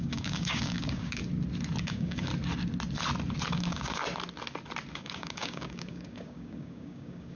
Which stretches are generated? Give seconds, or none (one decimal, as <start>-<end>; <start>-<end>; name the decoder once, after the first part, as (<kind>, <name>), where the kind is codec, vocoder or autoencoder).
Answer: 0.0-1.2 (codec, DAC); 1.8-2.3; 3.5-4.0; 4.9-7.4